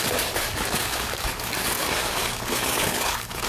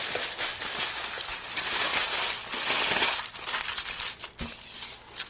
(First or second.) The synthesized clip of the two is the first